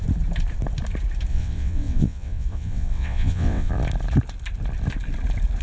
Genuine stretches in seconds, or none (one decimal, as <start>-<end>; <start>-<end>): 0.0-1.3; 3.7-5.6